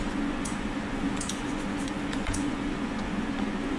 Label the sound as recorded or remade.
remade